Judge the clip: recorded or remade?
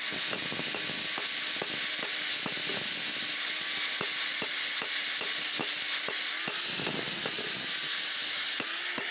recorded